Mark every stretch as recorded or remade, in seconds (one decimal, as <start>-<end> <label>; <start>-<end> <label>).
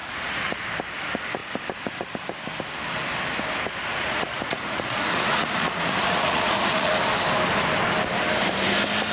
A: 0.0-0.6 remade; 0.6-3.9 recorded; 3.9-6.9 remade; 6.9-9.1 recorded